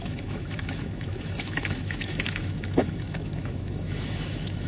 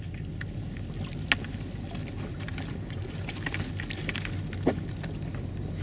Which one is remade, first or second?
first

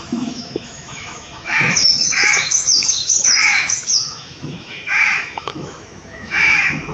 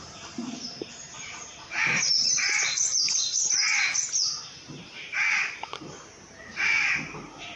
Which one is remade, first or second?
first